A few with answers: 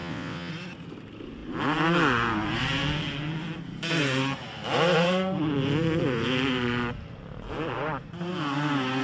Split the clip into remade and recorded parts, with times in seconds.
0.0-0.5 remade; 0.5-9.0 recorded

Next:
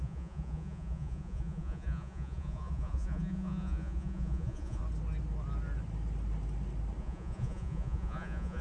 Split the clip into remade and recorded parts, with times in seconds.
0.0-4.8 remade; 4.8-7.0 recorded; 7.0-8.6 remade

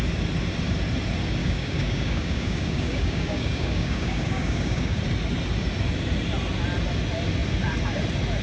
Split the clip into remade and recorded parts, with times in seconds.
0.0-1.4 recorded; 1.4-5.0 remade; 5.0-8.4 recorded

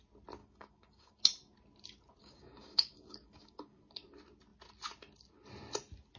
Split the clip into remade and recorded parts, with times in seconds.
0.0-0.4 recorded; 0.4-1.2 remade; 1.2-2.2 recorded; 2.2-3.8 remade; 3.8-6.2 recorded